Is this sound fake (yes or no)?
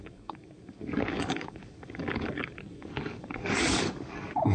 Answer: yes